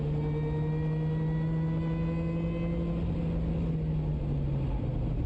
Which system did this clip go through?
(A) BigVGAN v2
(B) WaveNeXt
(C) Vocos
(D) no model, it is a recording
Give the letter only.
D